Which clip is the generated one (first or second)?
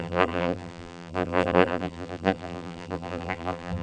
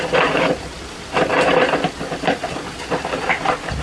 first